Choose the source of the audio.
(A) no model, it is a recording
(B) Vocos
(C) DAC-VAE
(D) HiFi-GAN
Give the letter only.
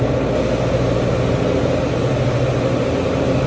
A